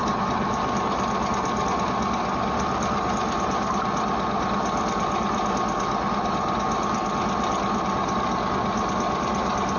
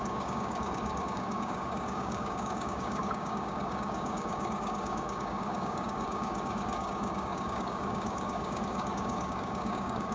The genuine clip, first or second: first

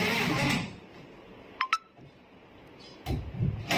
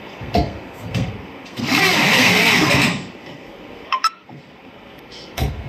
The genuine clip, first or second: first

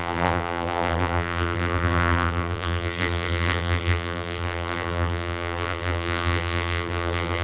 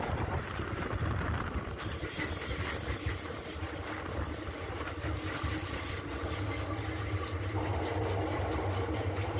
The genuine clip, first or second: second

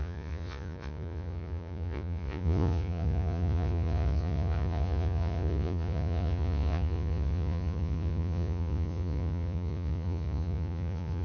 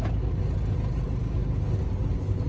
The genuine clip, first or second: second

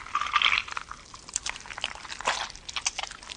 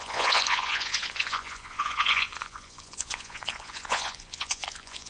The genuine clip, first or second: first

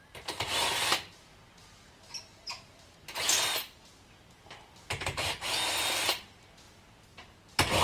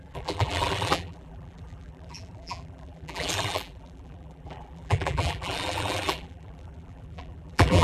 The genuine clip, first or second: first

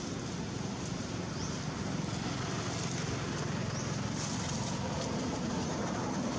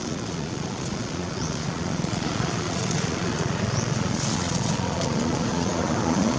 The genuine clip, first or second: first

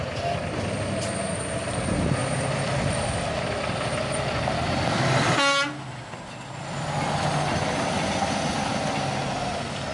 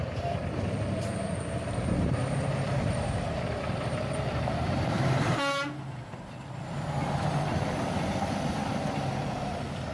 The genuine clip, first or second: first